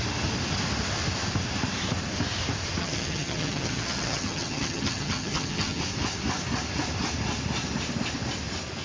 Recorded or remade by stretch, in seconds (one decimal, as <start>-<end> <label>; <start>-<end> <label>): 0.0-2.8 recorded; 2.8-5.8 remade; 5.8-8.8 recorded